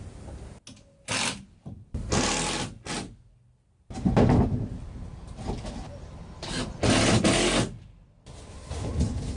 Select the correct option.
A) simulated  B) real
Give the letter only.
B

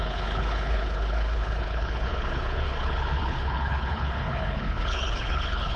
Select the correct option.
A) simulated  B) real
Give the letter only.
A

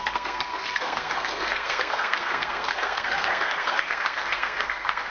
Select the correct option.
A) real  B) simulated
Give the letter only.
B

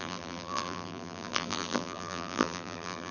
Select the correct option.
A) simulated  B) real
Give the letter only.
A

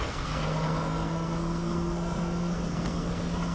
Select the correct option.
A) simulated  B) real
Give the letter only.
A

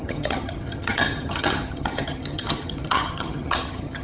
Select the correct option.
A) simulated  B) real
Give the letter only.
A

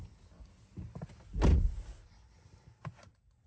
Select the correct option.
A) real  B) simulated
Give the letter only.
A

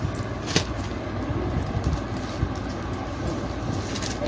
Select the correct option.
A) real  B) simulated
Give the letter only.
A